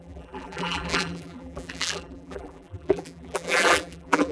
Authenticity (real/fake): fake